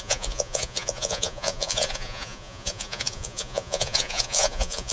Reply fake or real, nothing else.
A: fake